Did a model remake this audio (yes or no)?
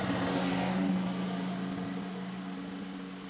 no